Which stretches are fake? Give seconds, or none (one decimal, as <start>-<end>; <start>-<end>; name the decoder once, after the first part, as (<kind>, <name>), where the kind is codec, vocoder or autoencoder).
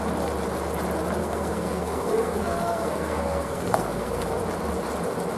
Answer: 1.2-4.4 (codec, SNAC)